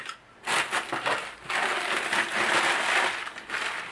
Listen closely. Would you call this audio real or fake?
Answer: real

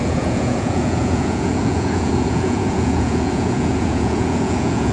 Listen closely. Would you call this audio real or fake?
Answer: fake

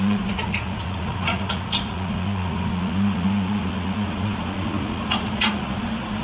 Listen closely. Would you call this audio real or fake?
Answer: fake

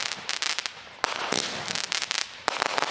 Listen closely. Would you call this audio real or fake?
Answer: real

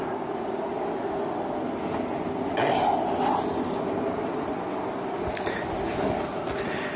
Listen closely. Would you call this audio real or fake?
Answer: real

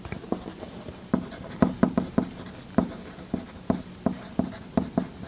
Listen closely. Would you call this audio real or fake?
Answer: real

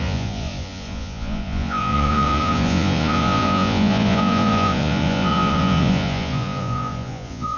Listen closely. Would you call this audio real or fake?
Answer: fake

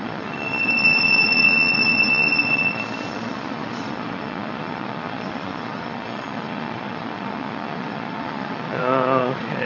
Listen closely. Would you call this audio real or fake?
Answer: fake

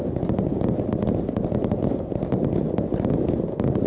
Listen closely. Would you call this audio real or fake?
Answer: real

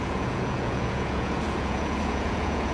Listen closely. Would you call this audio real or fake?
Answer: fake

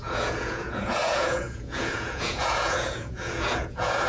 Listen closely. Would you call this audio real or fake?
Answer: fake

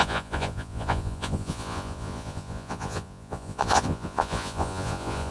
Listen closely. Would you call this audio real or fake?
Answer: fake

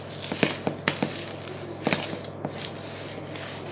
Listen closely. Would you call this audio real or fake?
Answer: real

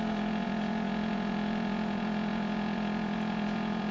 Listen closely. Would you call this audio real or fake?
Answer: fake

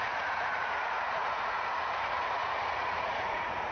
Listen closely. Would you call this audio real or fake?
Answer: fake